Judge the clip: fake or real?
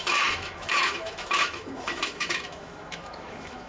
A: fake